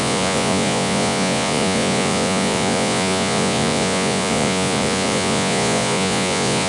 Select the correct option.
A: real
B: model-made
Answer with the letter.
B